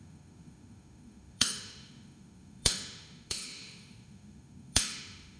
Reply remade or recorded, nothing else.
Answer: remade